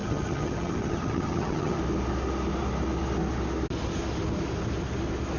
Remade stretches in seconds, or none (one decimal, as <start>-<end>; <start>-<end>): 0.0-1.8